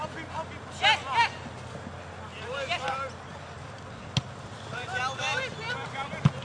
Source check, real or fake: real